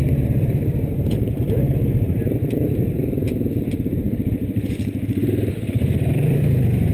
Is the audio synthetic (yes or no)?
yes